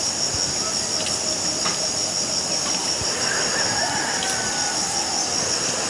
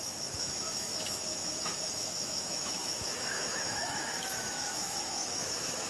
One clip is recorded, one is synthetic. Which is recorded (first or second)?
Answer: first